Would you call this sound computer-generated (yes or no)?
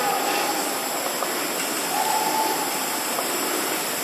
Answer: no